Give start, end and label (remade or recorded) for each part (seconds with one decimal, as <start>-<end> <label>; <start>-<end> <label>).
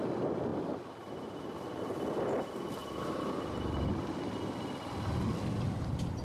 0.0-0.5 recorded; 0.5-1.8 remade; 1.8-2.8 recorded; 2.8-3.9 remade; 3.9-6.2 recorded